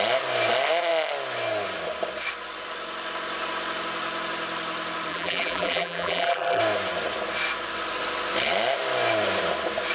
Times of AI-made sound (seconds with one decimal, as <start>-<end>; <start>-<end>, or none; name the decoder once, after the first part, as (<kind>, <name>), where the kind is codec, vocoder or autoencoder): 5.1-6.6 (vocoder, BigVGAN v2)

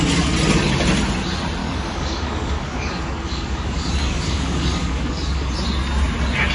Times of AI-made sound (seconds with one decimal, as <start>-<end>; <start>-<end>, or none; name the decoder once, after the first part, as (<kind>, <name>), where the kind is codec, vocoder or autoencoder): 1.6-5.5 (codec, DAC)

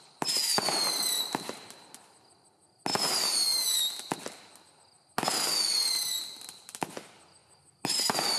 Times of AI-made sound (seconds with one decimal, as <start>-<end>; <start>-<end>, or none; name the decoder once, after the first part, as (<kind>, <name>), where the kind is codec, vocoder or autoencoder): none

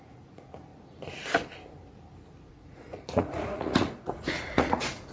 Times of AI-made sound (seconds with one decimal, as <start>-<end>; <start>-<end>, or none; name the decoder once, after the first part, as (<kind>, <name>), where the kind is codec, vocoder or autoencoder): 0.0-0.7 (vocoder, Vocos); 2.5-5.1

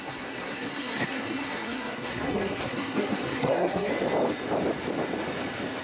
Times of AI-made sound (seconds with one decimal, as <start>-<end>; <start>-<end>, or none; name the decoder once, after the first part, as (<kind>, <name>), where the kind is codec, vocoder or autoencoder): 0.0-3.9 (codec, SNAC)

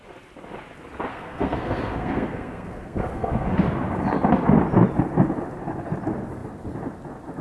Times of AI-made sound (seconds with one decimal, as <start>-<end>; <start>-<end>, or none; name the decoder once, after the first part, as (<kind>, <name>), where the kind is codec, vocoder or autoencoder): 1.1-3.6 (codec, SNAC)

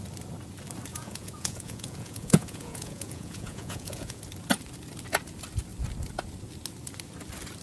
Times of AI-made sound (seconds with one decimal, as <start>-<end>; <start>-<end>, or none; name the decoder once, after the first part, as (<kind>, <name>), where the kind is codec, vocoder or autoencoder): 0.9-4.2 (vocoder, Vocos)